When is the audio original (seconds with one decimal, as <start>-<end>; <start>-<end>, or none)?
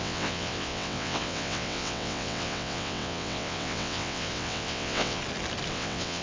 5.2-5.7